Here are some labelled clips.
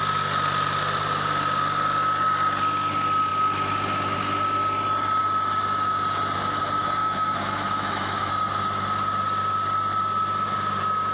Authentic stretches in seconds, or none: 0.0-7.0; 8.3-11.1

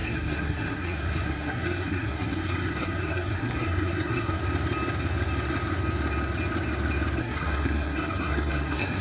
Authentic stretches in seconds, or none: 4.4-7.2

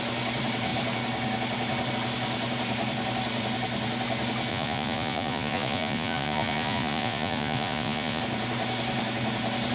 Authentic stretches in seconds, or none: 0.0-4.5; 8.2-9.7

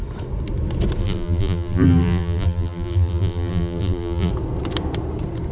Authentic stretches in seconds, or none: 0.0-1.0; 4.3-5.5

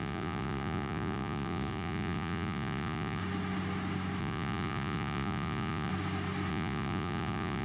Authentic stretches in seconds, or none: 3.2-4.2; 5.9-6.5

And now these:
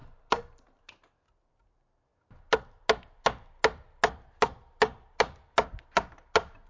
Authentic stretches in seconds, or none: 0.0-6.7

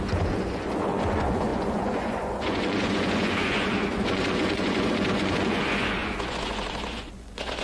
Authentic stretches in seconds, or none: none

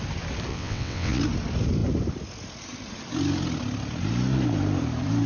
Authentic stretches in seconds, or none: 0.0-0.5; 1.2-5.3